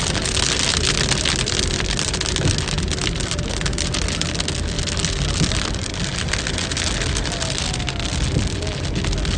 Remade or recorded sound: recorded